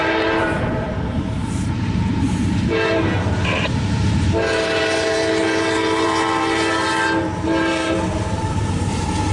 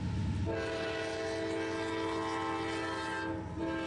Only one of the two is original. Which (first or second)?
second